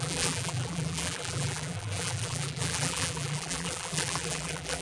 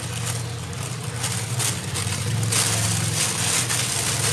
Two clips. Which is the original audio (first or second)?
second